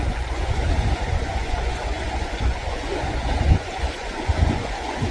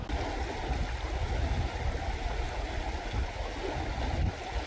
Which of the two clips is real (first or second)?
second